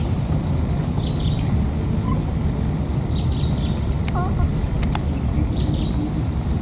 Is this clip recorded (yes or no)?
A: yes